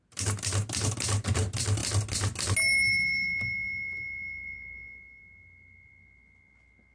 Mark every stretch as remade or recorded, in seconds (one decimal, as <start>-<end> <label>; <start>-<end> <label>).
0.0-6.9 recorded